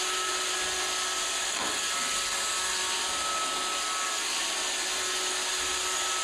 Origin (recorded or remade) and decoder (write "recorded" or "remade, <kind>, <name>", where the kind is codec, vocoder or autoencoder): recorded